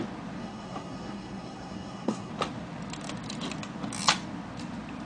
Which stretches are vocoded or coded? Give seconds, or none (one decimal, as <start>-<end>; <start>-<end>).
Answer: 0.4-2.3